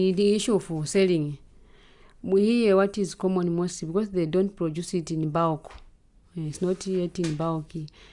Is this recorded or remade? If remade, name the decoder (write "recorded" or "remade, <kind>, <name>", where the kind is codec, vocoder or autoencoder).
recorded